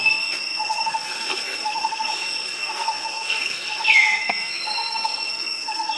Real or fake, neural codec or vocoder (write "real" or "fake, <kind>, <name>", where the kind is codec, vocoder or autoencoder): fake, codec, SNAC